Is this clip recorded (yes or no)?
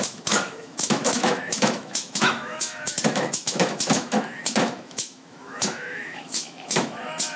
no